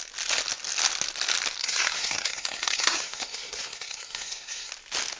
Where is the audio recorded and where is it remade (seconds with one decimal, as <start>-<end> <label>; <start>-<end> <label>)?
0.0-1.6 recorded; 1.6-4.7 remade; 4.7-5.2 recorded